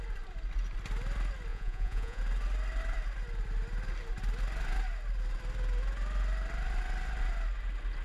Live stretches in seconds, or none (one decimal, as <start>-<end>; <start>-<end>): 0.0-1.5; 2.2-8.0